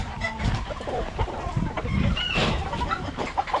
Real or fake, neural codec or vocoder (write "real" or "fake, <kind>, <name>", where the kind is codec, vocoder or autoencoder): fake, vocoder, BigVGAN v2